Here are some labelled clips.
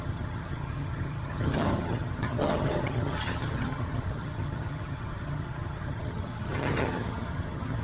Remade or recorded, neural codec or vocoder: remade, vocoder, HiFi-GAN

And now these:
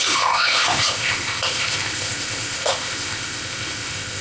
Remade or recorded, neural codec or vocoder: remade, codec, ZipCodec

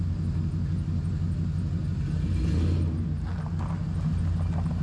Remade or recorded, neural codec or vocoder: recorded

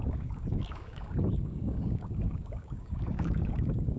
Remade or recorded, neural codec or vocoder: remade, codec, DAC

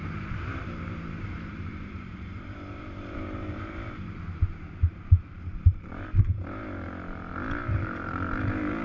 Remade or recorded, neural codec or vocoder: remade, vocoder, BigVGAN v2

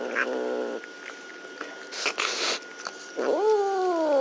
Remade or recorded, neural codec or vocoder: recorded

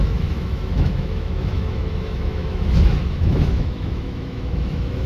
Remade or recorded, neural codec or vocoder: remade, autoencoder, DAC-VAE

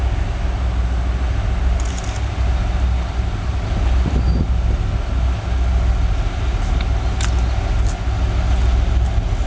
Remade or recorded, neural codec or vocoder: recorded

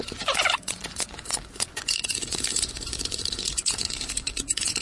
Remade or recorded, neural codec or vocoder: remade, vocoder, Vocos